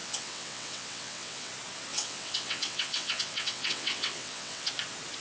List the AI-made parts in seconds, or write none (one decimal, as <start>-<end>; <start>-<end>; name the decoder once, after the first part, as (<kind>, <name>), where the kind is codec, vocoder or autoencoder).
0.0-1.5 (vocoder, WaveNeXt); 1.9-4.7